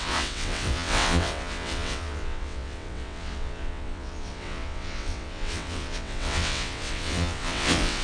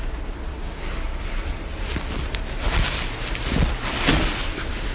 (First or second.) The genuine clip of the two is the second